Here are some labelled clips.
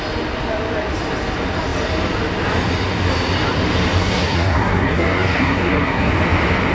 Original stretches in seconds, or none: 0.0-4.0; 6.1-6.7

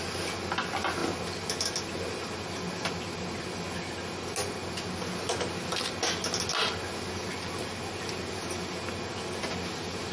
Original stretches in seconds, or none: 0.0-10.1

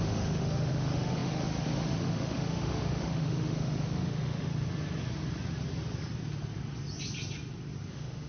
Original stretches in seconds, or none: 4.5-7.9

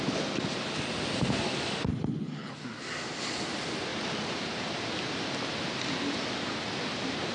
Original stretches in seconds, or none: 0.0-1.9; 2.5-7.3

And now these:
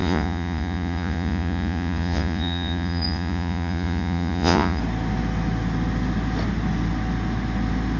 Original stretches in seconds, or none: 4.8-8.0